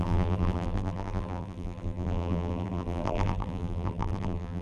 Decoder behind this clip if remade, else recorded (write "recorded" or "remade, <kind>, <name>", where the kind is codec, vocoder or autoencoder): remade, vocoder, BigVGAN v2